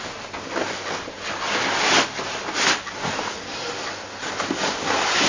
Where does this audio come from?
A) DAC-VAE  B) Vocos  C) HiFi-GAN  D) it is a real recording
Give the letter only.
D